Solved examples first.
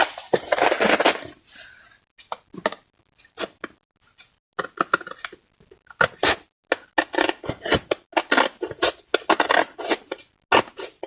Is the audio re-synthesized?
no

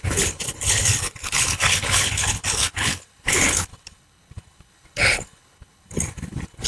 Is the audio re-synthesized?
yes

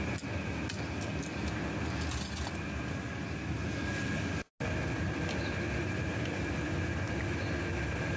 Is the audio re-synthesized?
no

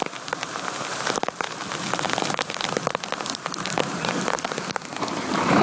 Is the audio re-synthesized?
yes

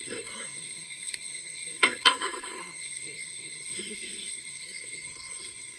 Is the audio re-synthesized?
yes